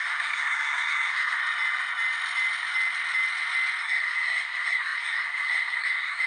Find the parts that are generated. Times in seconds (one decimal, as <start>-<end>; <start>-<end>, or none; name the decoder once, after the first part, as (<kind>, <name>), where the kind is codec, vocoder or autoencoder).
0.0-1.4 (codec, SNAC); 3.8-6.3